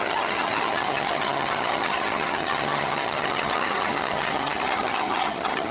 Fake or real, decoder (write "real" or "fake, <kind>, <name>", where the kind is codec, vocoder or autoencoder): fake, vocoder, HiFi-GAN